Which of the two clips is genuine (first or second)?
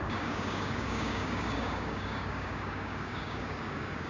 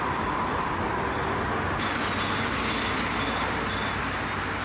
second